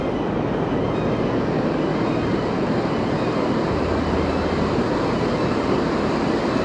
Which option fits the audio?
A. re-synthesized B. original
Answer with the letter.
B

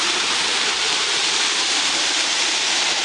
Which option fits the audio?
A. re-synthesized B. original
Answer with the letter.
A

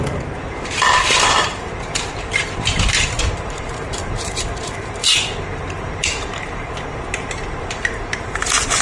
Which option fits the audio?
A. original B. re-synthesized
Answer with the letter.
B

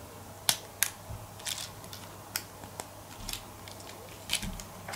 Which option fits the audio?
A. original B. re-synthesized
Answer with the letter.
A